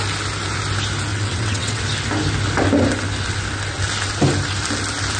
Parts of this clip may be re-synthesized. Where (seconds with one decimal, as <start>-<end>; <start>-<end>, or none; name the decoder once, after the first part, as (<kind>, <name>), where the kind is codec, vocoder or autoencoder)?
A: 1.1-1.8 (vocoder, WaveNeXt)